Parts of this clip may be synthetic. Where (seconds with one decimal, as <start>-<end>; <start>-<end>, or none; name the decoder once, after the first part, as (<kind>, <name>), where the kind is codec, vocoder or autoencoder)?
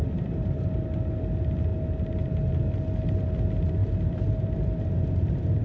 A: 0.0-0.6 (vocoder, BigVGAN v2); 3.8-4.9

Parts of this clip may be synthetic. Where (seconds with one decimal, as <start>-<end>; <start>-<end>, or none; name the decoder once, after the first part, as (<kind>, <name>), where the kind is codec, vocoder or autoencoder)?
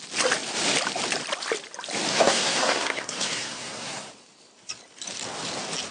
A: 2.1-4.1 (codec, SNAC)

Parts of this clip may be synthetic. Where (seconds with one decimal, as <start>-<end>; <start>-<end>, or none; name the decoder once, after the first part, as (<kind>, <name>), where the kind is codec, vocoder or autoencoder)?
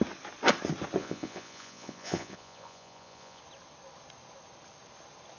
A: 1.0-3.4 (vocoder, Vocos)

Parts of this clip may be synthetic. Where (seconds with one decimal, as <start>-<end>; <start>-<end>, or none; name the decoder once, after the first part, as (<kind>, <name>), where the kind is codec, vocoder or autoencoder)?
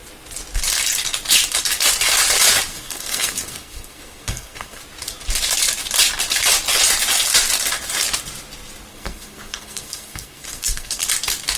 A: 2.7-4.8 (codec, SNAC); 8.9-11.0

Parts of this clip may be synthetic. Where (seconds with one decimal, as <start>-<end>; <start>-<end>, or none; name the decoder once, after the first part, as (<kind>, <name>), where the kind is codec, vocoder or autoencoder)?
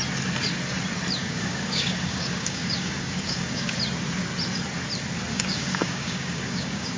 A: 1.2-3.8 (codec, DAC); 5.3-7.0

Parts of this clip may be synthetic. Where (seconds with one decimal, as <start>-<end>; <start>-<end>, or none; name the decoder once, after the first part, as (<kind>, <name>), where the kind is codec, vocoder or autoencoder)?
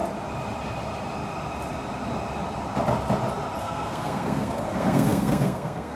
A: 3.6-6.0 (codec, SNAC)